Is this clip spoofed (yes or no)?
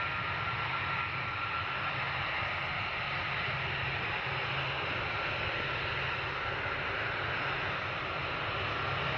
no